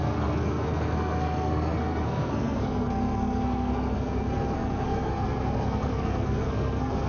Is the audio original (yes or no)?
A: no